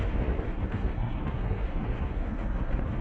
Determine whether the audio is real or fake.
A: fake